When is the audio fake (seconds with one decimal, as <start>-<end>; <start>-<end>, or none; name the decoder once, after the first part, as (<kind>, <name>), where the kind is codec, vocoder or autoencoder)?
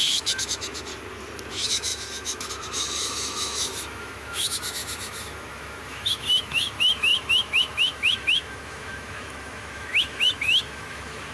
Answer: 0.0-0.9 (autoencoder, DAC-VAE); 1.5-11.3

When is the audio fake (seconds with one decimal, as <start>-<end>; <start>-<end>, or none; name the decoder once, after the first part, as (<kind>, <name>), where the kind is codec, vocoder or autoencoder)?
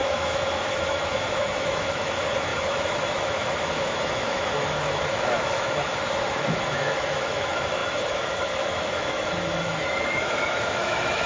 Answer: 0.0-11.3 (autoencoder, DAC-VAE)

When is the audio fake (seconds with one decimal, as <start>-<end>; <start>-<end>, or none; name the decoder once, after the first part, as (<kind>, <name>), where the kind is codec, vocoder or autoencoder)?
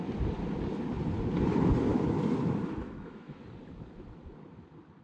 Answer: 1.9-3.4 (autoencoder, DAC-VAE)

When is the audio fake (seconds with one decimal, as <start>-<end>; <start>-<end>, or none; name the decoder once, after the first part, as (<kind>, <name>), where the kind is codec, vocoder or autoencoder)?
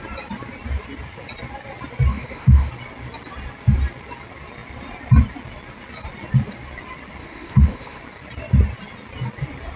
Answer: 2.1-2.7 (autoencoder, DAC-VAE); 7.2-8.0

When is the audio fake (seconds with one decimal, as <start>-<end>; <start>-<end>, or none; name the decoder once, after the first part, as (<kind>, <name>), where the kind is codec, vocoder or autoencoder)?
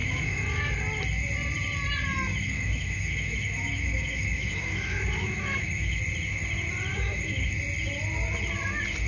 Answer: 0.0-0.7 (autoencoder, DAC-VAE); 2.3-6.0; 6.9-7.5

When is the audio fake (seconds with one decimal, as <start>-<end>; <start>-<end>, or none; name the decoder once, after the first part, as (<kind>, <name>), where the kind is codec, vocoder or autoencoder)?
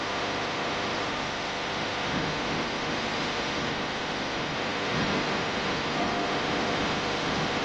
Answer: 0.0-7.6 (autoencoder, DAC-VAE)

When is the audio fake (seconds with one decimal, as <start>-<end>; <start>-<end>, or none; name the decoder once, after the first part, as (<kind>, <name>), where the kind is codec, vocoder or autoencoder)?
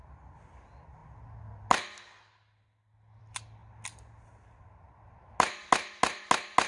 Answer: none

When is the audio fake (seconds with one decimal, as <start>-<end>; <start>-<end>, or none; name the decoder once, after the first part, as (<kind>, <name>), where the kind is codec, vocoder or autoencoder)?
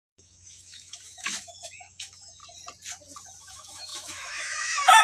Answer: 0.0-2.4 (autoencoder, DAC-VAE); 3.4-5.0